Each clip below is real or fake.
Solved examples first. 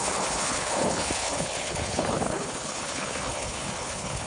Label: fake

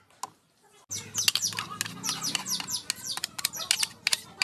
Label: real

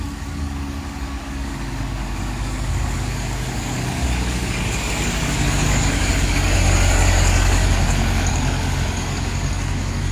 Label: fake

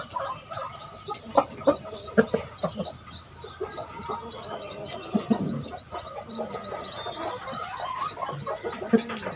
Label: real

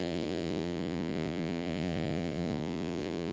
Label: fake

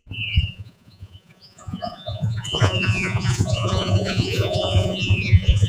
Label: fake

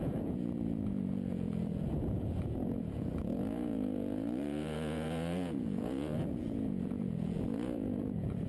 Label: fake